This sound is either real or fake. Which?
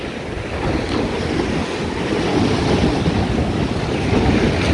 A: real